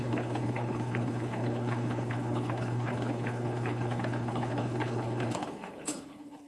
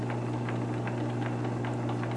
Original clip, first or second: second